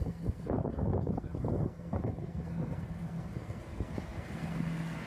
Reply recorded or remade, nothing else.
remade